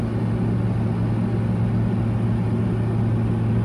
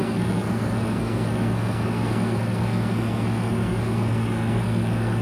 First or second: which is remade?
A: second